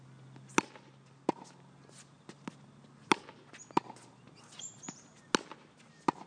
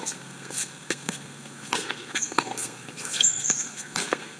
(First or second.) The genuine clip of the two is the first